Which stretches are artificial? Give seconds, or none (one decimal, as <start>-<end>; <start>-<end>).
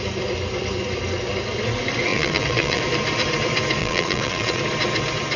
2.1-2.8; 3.8-4.6